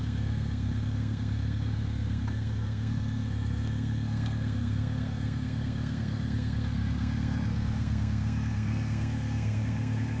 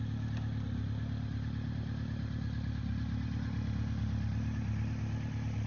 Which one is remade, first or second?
first